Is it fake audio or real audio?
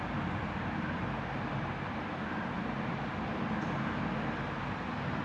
real